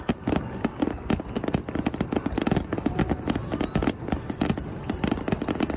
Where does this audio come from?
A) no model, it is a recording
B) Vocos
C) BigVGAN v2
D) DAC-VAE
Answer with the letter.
A